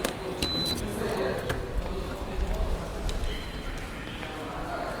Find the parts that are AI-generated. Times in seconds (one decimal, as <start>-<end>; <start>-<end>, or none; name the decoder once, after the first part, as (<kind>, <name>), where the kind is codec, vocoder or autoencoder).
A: 0.9-1.4 (vocoder, BigVGAN v2)